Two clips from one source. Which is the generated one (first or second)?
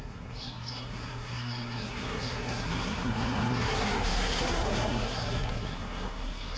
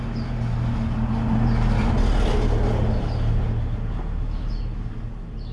first